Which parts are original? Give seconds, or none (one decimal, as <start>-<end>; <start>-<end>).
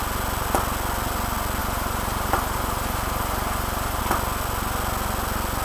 0.0-1.6; 4.0-5.6